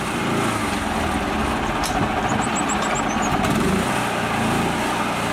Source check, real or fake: real